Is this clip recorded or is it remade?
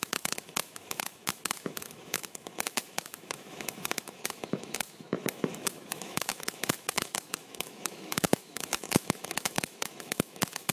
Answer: remade